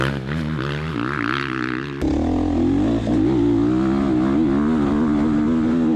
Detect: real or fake real